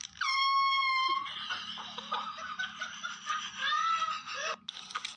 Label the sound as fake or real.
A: real